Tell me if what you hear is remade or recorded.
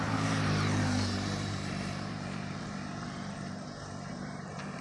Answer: remade